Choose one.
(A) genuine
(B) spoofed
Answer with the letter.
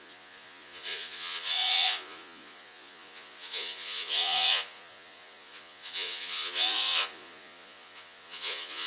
B